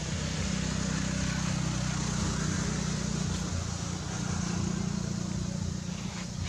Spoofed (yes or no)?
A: no